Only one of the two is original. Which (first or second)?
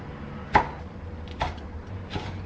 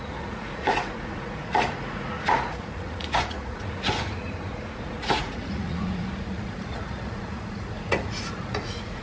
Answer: first